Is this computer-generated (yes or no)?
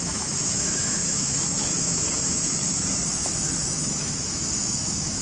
yes